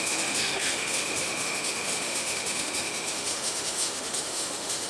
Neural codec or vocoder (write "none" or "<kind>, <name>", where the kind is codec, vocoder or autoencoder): autoencoder, DAC-VAE